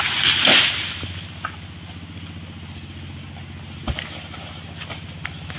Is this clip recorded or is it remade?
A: recorded